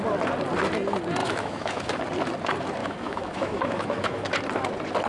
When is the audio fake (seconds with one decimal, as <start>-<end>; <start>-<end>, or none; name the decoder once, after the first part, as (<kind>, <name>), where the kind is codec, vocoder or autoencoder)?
1.2-2.0 (autoencoder, DAC-VAE); 2.8-4.4